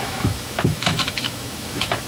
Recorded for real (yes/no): no